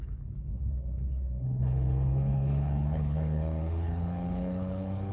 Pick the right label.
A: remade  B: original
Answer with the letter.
A